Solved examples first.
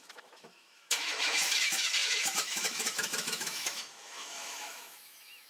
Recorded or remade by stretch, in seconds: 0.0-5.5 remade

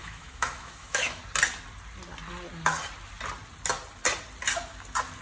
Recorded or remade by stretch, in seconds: 0.0-1.2 remade; 1.2-5.2 recorded

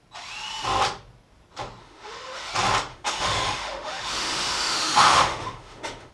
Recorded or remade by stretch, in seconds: 0.0-1.8 recorded; 1.8-2.5 remade; 2.5-2.9 recorded; 2.9-6.1 remade

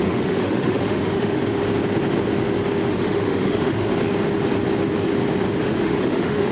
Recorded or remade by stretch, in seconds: 0.0-1.4 remade; 1.4-2.9 recorded; 2.9-3.9 remade; 3.9-5.6 recorded; 5.6-6.5 remade

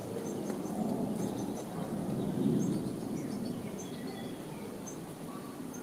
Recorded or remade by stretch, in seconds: 0.0-5.8 recorded

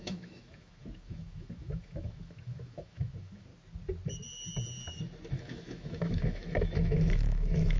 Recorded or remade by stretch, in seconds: 0.0-3.5 remade; 3.5-5.3 recorded; 5.3-7.8 remade

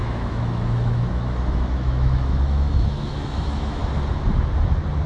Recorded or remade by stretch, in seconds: 0.0-3.8 remade; 3.8-5.1 recorded

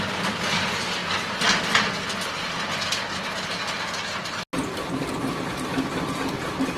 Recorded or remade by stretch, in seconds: 0.0-6.8 recorded